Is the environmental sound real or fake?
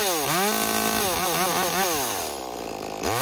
real